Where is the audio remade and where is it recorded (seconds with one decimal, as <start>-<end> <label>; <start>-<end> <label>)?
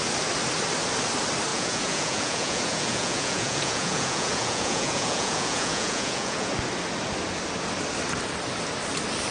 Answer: 0.0-1.5 recorded; 1.5-6.5 remade; 6.5-9.3 recorded